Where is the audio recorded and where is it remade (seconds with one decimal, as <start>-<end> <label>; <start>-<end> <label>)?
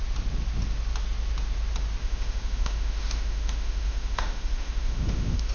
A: 0.0-2.0 recorded; 2.0-5.5 remade